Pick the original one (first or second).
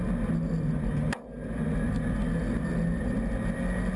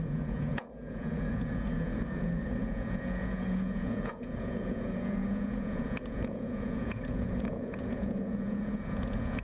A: first